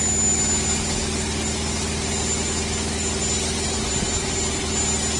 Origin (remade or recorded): recorded